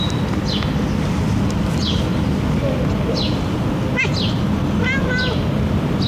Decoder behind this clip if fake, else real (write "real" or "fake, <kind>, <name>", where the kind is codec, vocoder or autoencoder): real